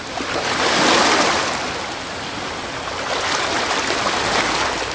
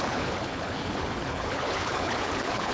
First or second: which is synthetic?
second